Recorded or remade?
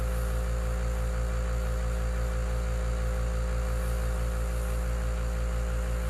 recorded